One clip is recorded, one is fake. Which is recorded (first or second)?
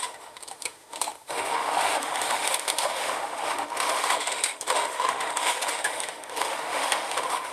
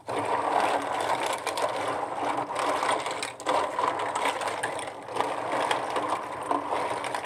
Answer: second